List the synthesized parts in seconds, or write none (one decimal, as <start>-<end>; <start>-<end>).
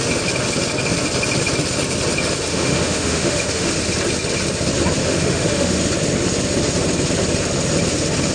2.5-3.7; 5.0-5.8